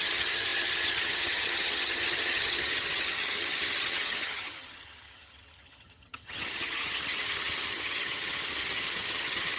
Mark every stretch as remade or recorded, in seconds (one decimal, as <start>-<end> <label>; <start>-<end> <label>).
0.0-9.6 remade